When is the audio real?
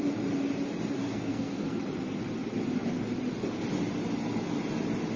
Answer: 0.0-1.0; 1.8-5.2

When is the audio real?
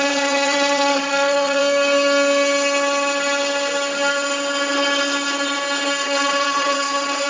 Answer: 1.6-6.0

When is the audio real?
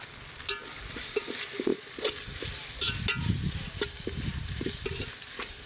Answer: 0.0-5.7